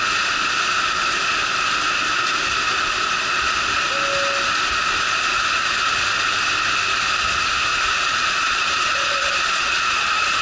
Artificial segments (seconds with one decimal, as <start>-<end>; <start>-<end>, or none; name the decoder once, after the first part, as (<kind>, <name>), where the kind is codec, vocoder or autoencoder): 7.7-10.4 (vocoder, Vocos)